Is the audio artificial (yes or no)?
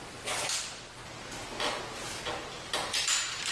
no